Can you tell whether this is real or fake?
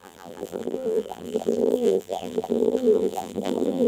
fake